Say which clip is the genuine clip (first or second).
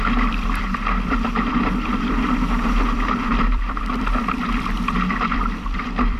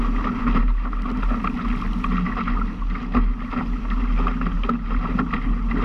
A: second